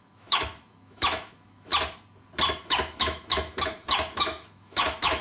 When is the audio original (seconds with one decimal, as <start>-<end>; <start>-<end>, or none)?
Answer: 1.7-2.5